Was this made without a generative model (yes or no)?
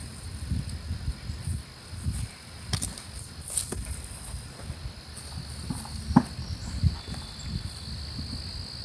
yes